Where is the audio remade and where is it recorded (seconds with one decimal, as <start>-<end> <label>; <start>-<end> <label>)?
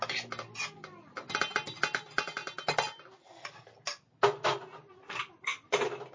0.0-6.1 recorded